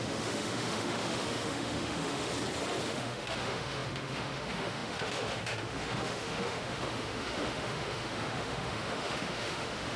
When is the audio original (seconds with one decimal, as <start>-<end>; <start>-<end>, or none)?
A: 2.3-2.9